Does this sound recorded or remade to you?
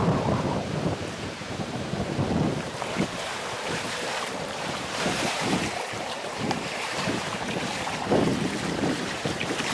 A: remade